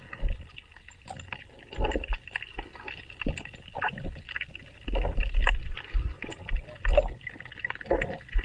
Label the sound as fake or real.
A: real